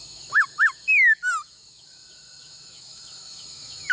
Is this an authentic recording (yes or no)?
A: no